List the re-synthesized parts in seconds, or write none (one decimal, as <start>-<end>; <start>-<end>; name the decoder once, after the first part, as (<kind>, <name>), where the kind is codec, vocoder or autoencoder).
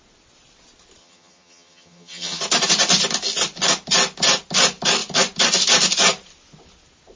1.0-2.4 (vocoder, HiFi-GAN)